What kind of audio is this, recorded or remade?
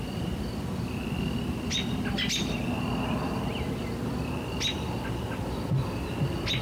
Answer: recorded